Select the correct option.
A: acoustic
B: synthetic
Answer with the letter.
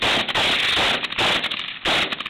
A